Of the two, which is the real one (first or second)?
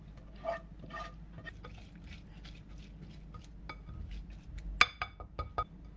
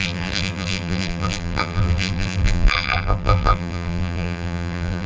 first